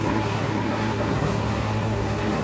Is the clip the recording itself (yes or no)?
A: no